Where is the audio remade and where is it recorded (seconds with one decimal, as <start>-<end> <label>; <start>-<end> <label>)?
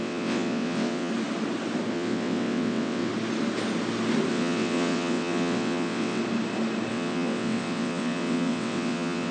0.0-1.1 remade; 1.1-1.9 recorded; 1.9-3.1 remade; 3.1-4.3 recorded; 4.3-6.2 remade; 6.2-6.9 recorded; 6.9-9.3 remade